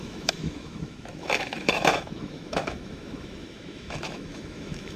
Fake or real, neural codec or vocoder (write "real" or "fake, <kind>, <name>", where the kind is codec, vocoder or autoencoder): fake, autoencoder, DAC-VAE